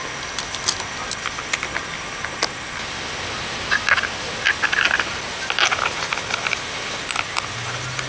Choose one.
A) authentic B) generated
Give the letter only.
A